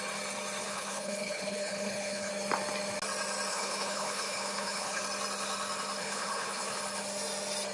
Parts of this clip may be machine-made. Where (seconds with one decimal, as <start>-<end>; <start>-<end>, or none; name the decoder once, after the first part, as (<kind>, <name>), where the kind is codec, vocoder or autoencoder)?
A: 0.6-2.3 (codec, HILCodec); 3.5-5.0; 6.0-6.8